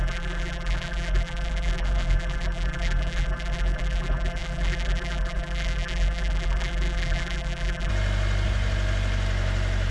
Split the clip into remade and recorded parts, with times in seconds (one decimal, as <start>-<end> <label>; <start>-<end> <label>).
0.0-7.9 remade; 7.9-9.9 recorded

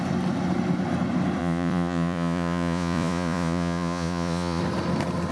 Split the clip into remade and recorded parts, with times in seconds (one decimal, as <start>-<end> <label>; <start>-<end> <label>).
0.0-1.4 recorded; 1.4-4.6 remade; 4.6-5.3 recorded

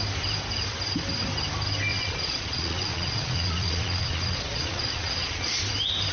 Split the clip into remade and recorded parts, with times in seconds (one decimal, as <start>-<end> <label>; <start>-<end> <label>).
0.0-1.9 recorded; 1.9-5.6 remade; 5.6-6.1 recorded

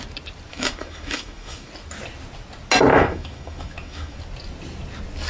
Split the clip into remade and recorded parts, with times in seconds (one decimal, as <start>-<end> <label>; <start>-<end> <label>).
0.0-0.5 recorded; 0.5-1.7 remade; 1.7-2.9 recorded; 2.9-4.2 remade; 4.2-5.3 recorded

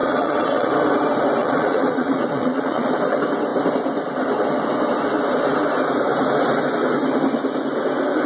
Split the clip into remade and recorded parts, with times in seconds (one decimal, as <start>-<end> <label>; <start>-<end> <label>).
0.0-0.7 remade; 0.7-1.4 recorded; 1.4-2.9 remade; 2.9-8.3 recorded

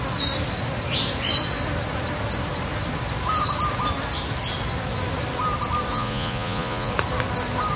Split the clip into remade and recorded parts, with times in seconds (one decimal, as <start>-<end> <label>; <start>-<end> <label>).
0.0-5.9 recorded; 5.9-6.9 remade; 6.9-7.8 recorded